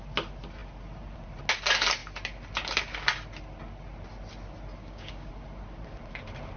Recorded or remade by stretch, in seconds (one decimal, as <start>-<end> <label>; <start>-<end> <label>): 0.0-4.8 recorded; 4.8-5.3 remade; 5.3-6.6 recorded